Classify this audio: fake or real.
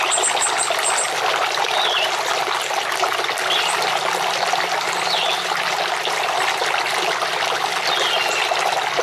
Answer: real